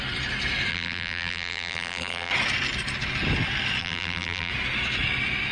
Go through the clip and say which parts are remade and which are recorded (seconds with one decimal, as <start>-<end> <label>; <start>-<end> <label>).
0.0-0.7 recorded; 0.7-2.3 remade; 2.3-3.8 recorded; 3.8-4.5 remade; 4.5-5.5 recorded

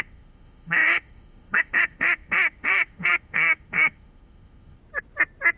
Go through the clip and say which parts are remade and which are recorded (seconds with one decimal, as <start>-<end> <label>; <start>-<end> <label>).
0.0-4.8 remade; 4.8-5.6 recorded

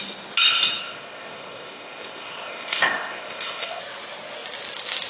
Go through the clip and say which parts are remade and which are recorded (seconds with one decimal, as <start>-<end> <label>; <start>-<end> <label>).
0.0-0.8 recorded; 0.8-3.8 remade; 3.8-5.1 recorded

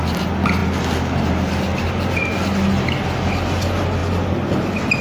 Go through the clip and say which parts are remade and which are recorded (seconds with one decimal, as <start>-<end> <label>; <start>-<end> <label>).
0.0-5.0 recorded

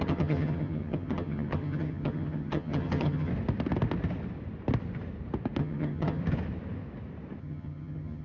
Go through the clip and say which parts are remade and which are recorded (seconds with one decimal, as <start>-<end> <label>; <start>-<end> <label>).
0.0-3.3 remade; 3.3-5.6 recorded; 5.6-6.2 remade; 6.2-7.4 recorded; 7.4-8.2 remade

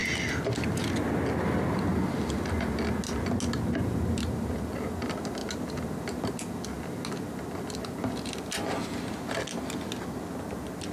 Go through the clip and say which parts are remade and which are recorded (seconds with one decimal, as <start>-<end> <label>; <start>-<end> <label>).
0.0-10.9 recorded